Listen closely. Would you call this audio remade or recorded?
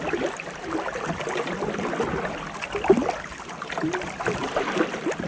recorded